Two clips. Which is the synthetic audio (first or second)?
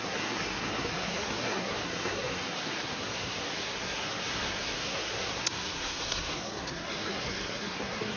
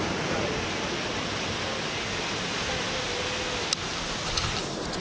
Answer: first